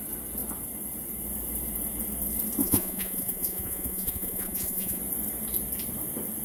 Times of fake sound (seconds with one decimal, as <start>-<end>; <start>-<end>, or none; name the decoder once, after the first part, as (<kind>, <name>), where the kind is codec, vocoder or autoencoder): 2.6-5.0 (vocoder, Vocos)